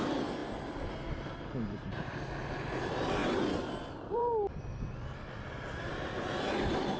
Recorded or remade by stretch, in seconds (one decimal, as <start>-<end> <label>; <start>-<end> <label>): 0.0-3.2 remade; 3.2-3.8 recorded; 3.8-4.3 remade; 4.3-5.9 recorded; 5.9-7.0 remade